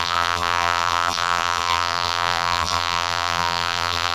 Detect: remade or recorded remade